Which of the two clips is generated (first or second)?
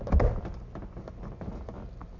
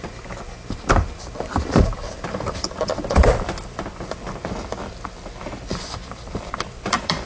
second